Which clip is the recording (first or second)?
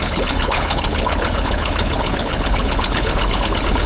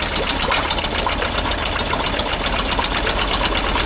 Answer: second